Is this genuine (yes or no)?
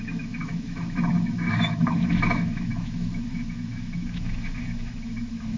no